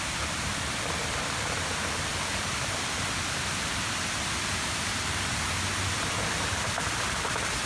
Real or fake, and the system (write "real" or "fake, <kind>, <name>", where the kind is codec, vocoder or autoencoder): fake, vocoder, BigVGAN v2